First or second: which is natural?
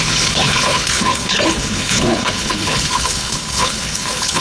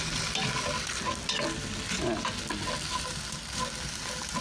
second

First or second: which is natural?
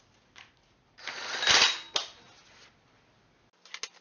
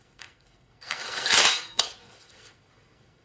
first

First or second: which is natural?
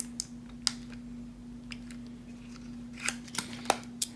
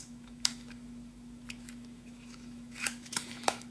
first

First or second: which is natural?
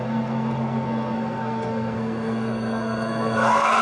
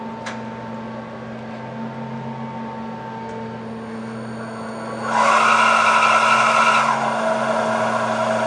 second